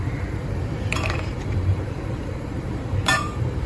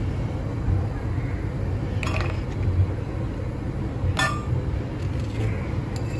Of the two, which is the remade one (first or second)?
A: first